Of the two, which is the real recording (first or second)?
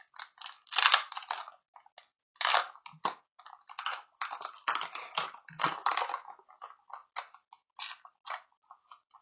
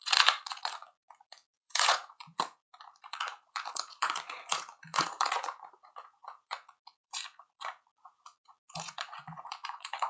first